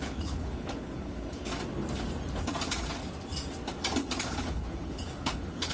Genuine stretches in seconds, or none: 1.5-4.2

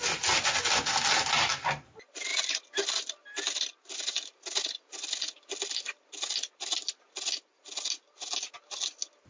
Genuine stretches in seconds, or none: 0.0-9.3

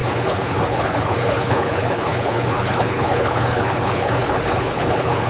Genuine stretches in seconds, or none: none

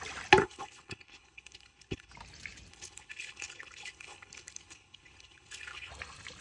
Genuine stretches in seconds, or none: 0.0-0.4; 2.1-2.7; 5.9-6.4